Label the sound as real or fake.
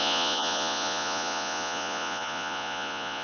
fake